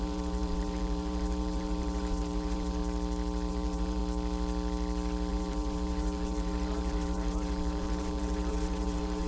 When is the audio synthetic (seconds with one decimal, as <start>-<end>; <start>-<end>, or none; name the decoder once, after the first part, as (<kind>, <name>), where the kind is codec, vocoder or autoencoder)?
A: 0.0-2.8 (vocoder, BigVGAN v2); 3.5-4.0; 5.3-9.3